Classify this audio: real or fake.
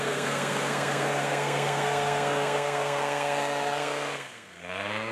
fake